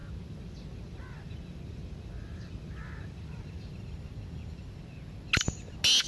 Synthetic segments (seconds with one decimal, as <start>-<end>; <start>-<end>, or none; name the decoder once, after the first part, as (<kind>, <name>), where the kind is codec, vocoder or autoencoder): 0.0-3.6 (vocoder, BigVGAN v2)